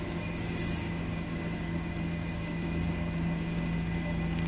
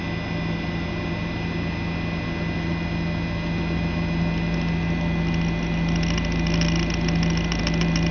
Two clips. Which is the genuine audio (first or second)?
second